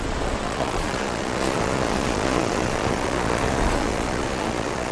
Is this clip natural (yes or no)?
no